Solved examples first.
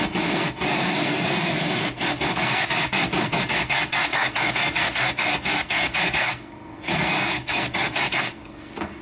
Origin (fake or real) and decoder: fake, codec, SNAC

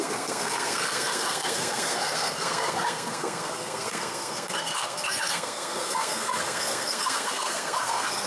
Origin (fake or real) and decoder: fake, codec, SNAC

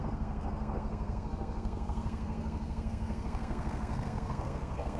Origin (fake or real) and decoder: fake, codec, SNAC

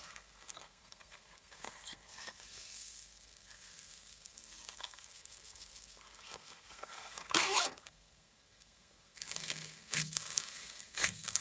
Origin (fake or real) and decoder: fake, codec, SNAC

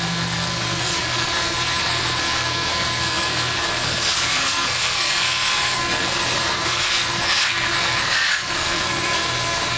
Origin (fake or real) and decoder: fake, codec, SNAC